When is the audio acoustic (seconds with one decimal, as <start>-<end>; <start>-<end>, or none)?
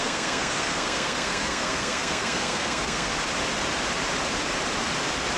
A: 3.1-5.4